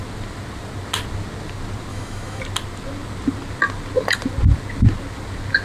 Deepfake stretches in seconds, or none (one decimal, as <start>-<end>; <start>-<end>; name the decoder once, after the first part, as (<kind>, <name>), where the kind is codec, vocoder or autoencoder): 1.9-2.4 (autoencoder, DAC-VAE)